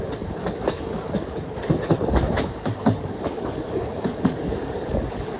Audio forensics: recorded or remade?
remade